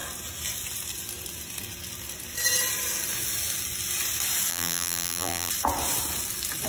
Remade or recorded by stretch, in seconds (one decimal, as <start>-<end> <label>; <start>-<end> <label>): 0.0-4.5 recorded; 4.5-5.5 remade; 5.5-6.7 recorded